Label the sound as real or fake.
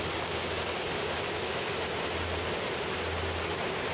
real